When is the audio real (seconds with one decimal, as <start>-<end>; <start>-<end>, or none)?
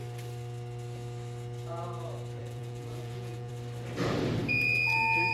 0.0-2.4; 3.5-5.3